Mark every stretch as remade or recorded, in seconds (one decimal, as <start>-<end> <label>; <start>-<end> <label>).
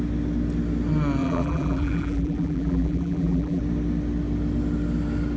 0.0-1.2 recorded; 1.2-3.6 remade; 3.6-5.4 recorded